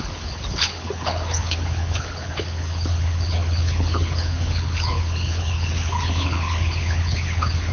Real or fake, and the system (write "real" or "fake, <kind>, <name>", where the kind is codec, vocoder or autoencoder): fake, codec, HILCodec